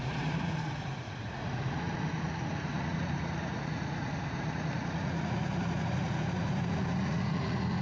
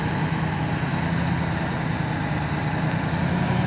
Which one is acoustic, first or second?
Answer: second